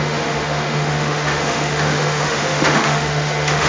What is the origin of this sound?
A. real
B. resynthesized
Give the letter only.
B